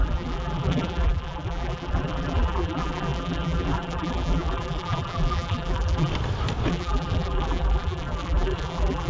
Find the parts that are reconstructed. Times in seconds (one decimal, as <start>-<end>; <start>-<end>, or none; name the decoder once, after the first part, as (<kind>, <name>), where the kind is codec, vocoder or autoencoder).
0.0-6.1 (vocoder, BigVGAN v2); 6.7-9.1